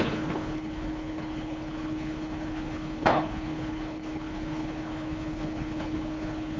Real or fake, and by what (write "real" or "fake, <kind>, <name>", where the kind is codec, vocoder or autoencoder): fake, codec, HILCodec